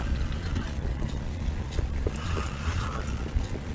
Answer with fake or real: fake